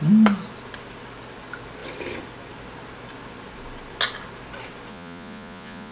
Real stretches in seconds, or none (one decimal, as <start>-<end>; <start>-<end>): 0.0-4.9